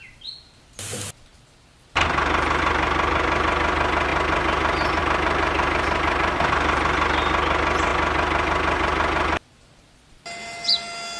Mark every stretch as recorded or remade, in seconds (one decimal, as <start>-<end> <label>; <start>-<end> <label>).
0.0-11.2 recorded